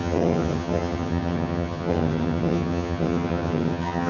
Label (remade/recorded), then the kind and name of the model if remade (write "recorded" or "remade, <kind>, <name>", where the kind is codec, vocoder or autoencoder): remade, vocoder, HiFi-GAN